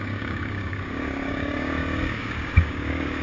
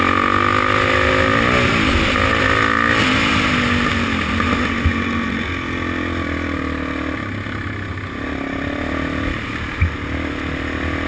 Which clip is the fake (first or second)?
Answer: first